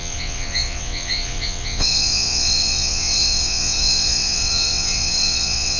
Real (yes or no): no